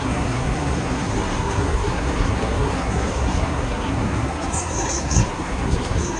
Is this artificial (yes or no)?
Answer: yes